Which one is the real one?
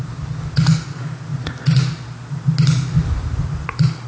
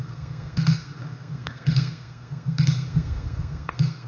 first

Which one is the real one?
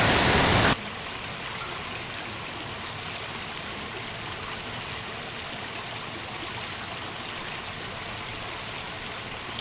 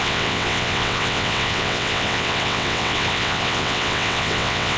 first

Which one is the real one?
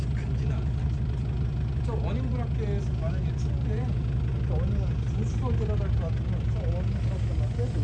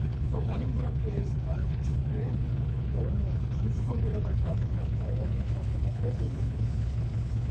first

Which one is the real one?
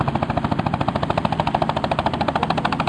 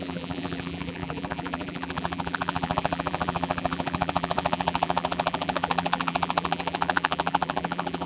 first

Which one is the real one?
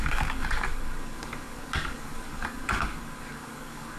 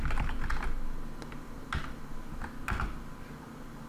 second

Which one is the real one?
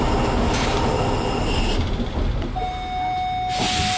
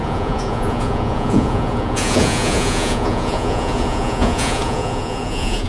first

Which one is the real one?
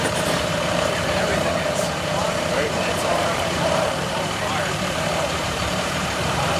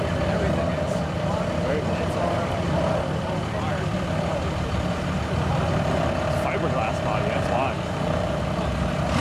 second